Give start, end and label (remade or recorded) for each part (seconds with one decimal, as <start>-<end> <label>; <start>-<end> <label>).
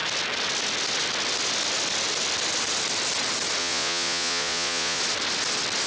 0.0-3.6 recorded; 3.6-5.0 remade; 5.0-5.9 recorded